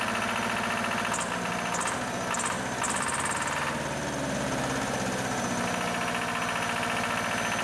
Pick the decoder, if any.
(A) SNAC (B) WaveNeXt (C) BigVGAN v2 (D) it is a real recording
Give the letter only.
D